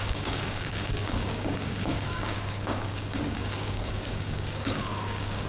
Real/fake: fake